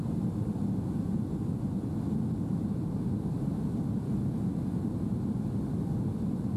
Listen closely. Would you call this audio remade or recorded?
recorded